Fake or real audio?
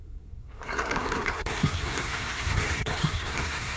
fake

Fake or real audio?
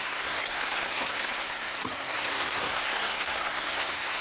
fake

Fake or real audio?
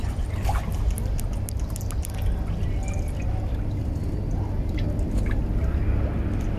real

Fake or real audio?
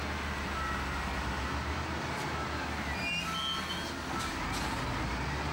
real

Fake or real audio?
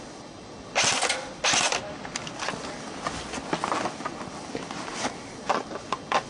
real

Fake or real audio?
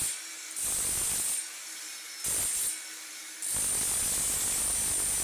real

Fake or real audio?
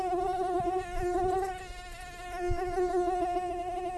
real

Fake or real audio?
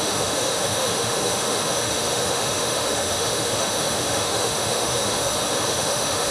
fake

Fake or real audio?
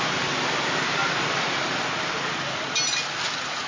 real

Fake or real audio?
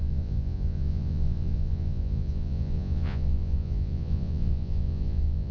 fake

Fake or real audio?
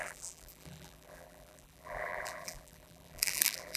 fake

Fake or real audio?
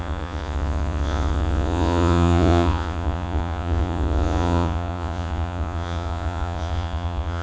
fake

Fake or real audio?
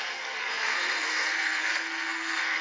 fake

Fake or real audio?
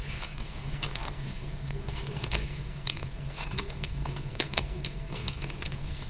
fake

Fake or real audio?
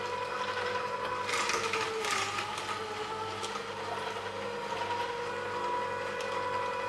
real